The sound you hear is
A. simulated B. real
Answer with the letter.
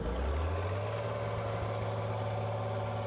B